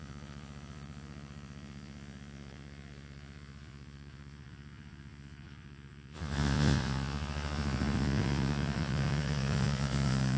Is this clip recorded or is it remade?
remade